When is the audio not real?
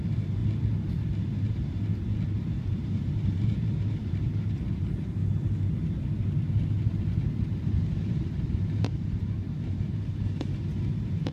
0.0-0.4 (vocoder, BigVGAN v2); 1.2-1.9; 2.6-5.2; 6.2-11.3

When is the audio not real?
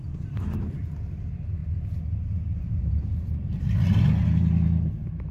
0.0-5.3 (vocoder, BigVGAN v2)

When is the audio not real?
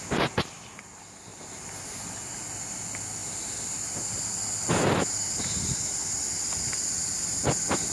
none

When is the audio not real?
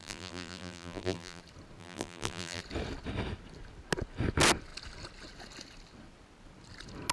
0.0-1.4 (vocoder, BigVGAN v2); 1.8-2.6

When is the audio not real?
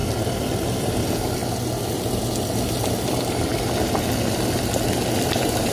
0.0-1.4 (vocoder, BigVGAN v2); 1.9-3.5; 5.2-5.7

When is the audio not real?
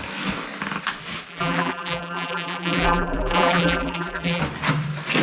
1.3-4.4 (vocoder, BigVGAN v2)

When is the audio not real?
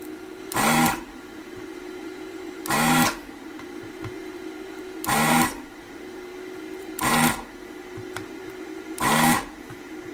0.0-6.3 (vocoder, BigVGAN v2); 6.8-10.1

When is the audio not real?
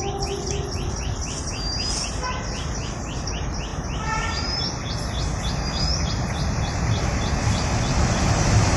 3.7-4.7 (vocoder, BigVGAN v2); 5.9-6.6